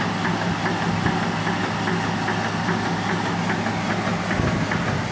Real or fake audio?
real